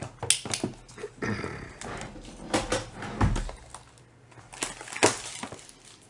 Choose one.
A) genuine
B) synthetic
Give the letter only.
A